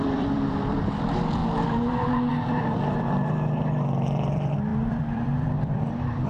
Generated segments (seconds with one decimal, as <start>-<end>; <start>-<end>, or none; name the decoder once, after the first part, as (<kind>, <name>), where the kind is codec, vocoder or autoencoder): 0.0-1.4 (vocoder, BigVGAN v2); 2.3-6.3